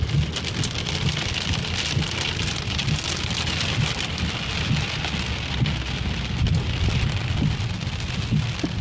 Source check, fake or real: real